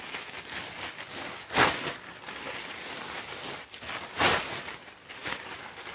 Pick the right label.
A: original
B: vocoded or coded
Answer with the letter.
A